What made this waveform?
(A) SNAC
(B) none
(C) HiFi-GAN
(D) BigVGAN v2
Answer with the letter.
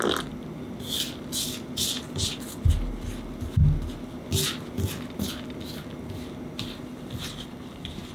B